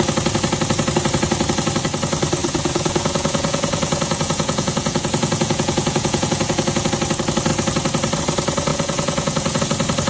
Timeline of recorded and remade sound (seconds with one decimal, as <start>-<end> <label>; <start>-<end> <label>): 0.0-2.4 recorded; 2.4-6.9 remade; 6.9-8.7 recorded; 8.7-9.6 remade; 9.6-10.1 recorded